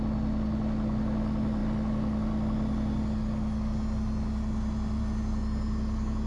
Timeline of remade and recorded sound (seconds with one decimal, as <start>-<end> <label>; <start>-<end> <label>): 0.0-6.3 recorded